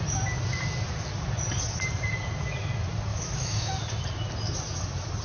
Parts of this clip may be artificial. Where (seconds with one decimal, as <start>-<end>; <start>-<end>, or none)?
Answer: 3.1-3.7